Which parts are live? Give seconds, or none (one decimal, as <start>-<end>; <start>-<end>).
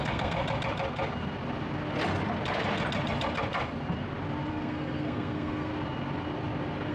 0.4-4.5; 5.7-6.9